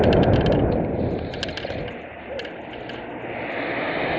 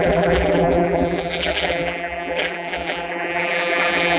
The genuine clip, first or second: first